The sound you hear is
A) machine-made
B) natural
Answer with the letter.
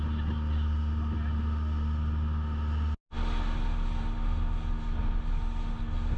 B